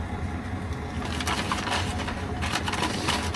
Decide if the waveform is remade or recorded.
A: recorded